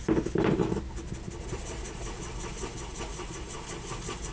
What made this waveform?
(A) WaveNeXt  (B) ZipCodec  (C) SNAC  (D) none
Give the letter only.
D